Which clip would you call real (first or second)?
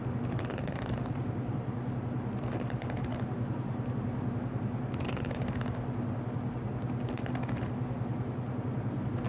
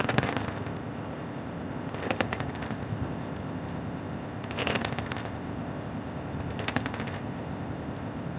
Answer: first